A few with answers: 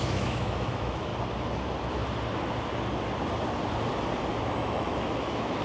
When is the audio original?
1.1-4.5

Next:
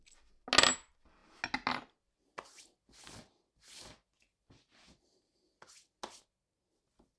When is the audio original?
0.0-7.2